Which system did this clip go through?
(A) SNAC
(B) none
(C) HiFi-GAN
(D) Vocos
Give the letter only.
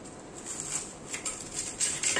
B